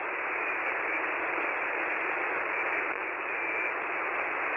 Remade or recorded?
recorded